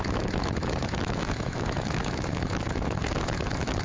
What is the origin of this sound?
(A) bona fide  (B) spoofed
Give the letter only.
B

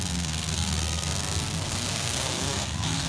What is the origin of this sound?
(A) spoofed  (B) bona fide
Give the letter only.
A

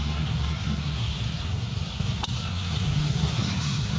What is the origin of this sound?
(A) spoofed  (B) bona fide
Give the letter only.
A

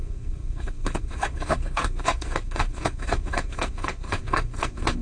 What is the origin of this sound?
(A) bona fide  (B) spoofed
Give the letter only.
B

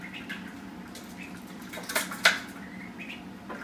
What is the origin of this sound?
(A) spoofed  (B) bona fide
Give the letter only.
B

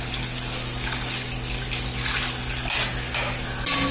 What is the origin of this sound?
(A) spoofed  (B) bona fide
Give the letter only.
B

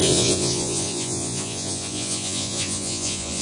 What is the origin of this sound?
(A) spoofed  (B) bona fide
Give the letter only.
A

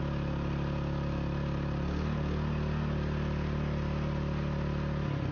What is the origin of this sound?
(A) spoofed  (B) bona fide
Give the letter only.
B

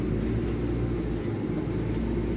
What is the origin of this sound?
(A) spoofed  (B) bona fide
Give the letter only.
B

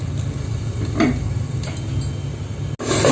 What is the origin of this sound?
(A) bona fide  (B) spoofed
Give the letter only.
A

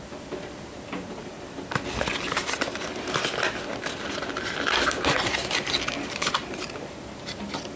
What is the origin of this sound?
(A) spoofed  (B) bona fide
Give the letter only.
A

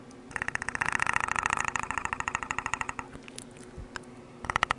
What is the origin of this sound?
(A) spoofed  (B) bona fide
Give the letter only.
B